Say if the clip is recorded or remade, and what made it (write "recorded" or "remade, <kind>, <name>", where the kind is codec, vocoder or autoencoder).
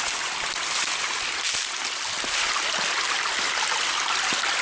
recorded